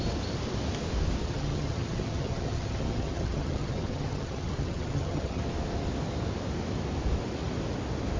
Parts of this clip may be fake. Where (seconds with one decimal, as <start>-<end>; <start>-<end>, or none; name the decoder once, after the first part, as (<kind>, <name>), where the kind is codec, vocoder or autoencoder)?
1.2-5.4 (vocoder, HiFi-GAN)